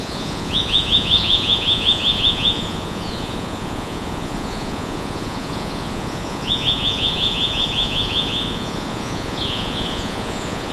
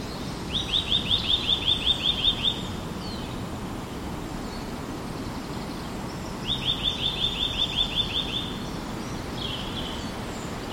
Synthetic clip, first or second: first